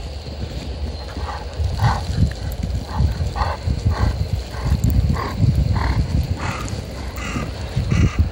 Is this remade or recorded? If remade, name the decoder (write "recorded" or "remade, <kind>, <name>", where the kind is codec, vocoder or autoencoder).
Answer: recorded